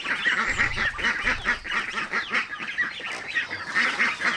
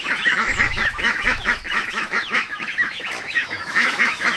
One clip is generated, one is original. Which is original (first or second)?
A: first